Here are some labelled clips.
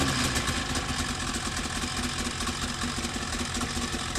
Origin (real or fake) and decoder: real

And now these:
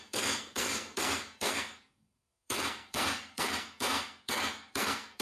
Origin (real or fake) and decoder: fake, codec, SNAC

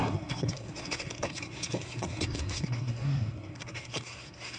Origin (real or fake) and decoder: fake, codec, SNAC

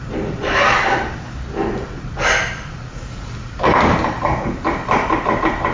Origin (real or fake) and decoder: real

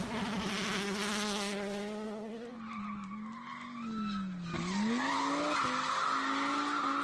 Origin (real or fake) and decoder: real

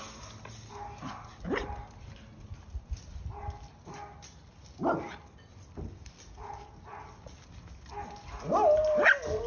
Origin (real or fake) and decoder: real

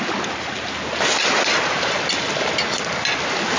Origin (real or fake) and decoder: real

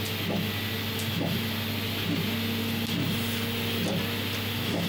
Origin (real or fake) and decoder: real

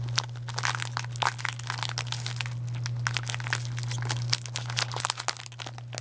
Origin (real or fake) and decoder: real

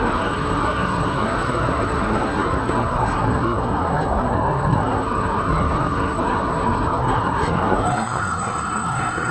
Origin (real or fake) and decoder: fake, codec, SNAC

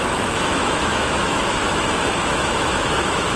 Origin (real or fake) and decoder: fake, autoencoder, DAC-VAE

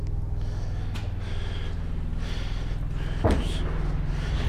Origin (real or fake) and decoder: real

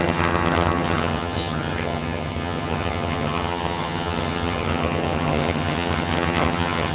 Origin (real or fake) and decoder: fake, vocoder, HiFi-GAN